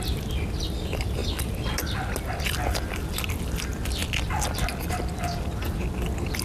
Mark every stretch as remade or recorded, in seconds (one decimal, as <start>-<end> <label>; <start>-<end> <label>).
0.0-6.4 recorded